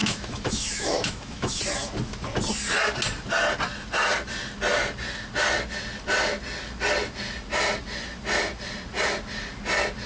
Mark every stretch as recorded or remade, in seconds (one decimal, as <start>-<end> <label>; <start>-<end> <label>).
0.0-1.6 remade; 1.6-10.1 recorded